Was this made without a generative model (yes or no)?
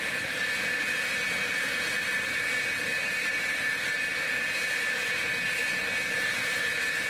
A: yes